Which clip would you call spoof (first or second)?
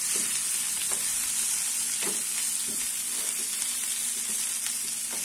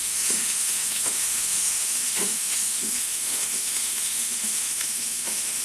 second